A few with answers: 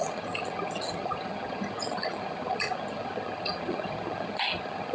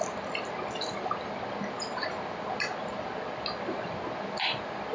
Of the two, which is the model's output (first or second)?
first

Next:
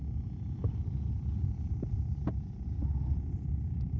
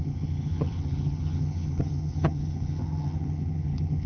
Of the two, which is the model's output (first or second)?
second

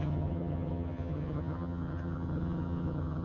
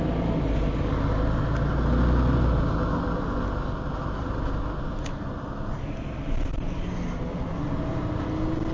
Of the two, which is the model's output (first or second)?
first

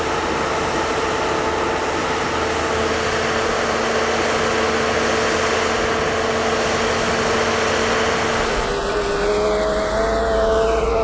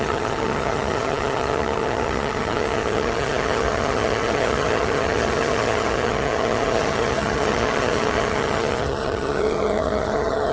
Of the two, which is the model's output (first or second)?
second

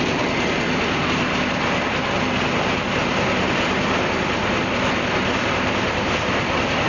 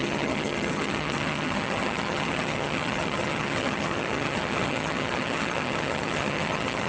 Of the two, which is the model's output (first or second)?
second